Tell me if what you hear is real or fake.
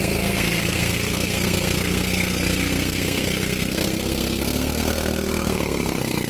fake